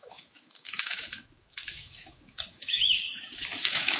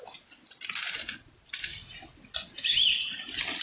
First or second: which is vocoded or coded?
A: first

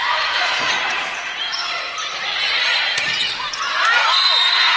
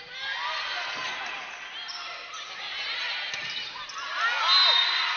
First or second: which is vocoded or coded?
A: first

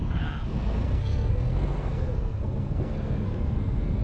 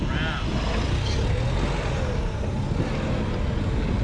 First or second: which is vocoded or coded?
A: first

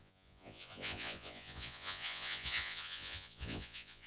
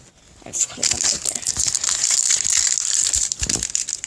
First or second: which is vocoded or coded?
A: first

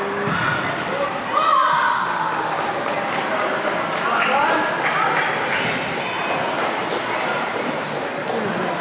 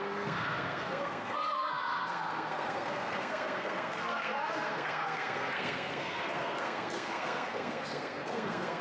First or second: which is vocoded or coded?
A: second